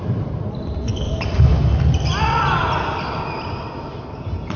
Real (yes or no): yes